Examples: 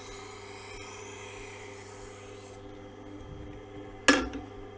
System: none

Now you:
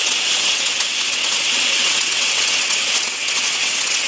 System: vocoder, WaveNeXt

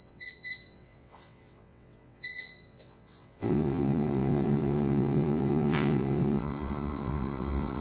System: vocoder, WaveNeXt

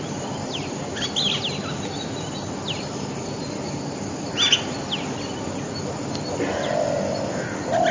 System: none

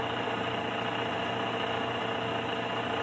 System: none